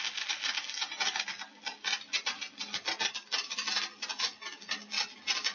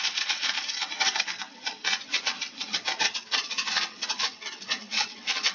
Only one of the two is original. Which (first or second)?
first